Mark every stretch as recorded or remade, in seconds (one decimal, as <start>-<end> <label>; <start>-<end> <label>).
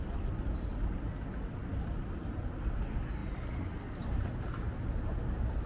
0.0-5.7 recorded